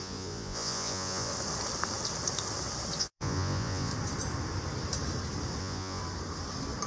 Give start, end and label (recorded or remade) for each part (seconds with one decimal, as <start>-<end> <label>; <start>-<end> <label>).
0.0-1.3 remade; 1.3-3.0 recorded; 3.0-3.9 remade; 3.9-5.6 recorded; 5.6-6.0 remade; 6.0-6.9 recorded